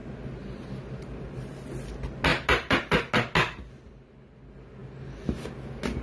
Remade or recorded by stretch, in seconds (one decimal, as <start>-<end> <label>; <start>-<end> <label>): 0.0-6.0 recorded